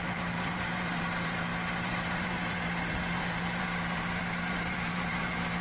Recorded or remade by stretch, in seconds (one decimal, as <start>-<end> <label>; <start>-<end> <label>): 0.0-5.6 remade